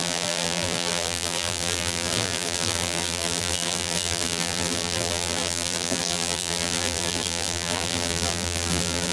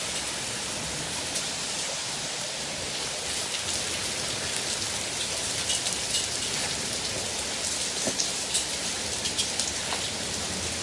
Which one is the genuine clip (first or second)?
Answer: second